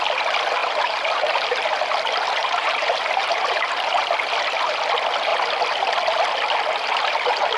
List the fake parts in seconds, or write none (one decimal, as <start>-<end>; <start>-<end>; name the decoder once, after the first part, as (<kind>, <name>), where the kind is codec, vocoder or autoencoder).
0.6-1.6 (vocoder, BigVGAN v2); 2.4-4.0